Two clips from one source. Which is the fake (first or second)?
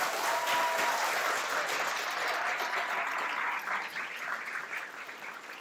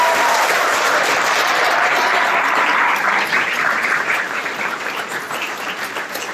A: second